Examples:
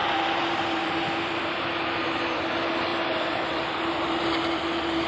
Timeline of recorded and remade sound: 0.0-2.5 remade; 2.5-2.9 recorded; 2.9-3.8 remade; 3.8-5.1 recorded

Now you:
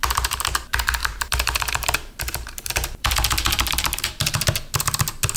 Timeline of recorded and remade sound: 0.0-1.0 recorded; 1.0-4.2 remade; 4.2-5.4 recorded

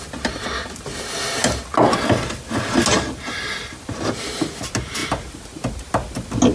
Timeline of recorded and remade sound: 0.0-6.5 recorded

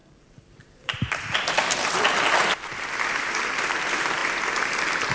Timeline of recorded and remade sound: 0.0-2.2 remade; 2.2-5.1 recorded